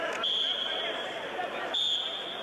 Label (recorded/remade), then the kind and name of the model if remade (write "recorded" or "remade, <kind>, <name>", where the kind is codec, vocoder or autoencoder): remade, vocoder, BigVGAN v2